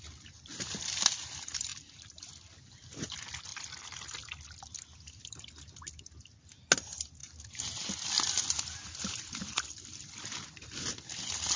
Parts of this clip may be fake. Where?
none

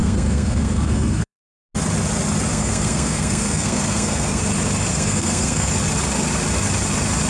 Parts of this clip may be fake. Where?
0.0-1.4; 2.5-4.4; 4.9-5.7

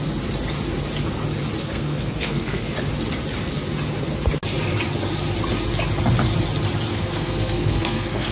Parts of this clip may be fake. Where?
1.6-2.7; 6.9-8.3

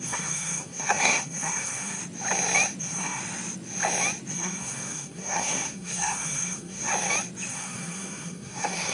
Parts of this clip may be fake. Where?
0.0-2.0; 2.8-3.2; 4.3-6.9; 7.5-8.9

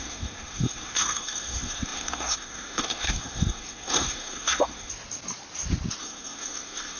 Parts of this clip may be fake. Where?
0.0-4.9; 6.0-7.0